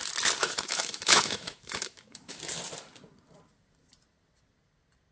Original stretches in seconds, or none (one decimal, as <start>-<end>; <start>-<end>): 0.0-0.4; 2.4-5.1